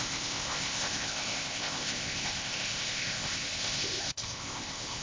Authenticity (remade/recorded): remade